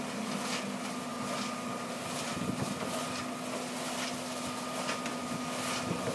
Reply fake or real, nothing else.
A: real